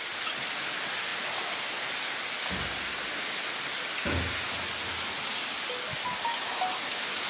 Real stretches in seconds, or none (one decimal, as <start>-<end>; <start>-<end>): 0.0-7.3